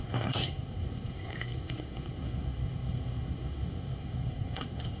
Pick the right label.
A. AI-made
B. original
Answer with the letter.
A